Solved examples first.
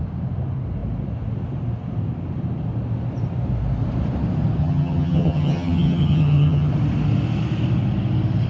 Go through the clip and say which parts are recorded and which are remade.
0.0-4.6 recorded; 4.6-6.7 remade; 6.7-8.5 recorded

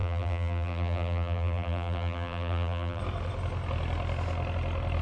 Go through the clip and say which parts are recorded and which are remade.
0.0-3.0 remade; 3.0-5.0 recorded

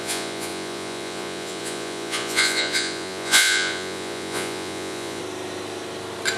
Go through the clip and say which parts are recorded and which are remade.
0.0-5.2 remade; 5.2-6.4 recorded

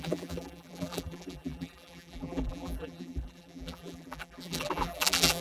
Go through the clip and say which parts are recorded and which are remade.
0.0-5.4 remade

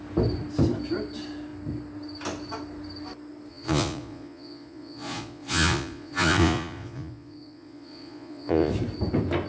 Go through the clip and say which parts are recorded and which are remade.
0.0-3.5 recorded; 3.5-8.7 remade; 8.7-9.5 recorded

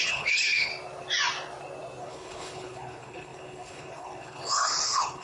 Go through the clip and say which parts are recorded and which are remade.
0.0-0.7 remade; 0.7-2.0 recorded; 2.0-5.2 remade

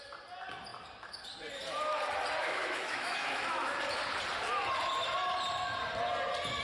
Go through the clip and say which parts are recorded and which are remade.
0.0-2.4 recorded; 2.4-3.8 remade; 3.8-6.6 recorded

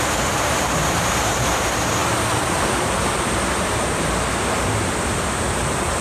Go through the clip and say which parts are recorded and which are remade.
0.0-6.0 remade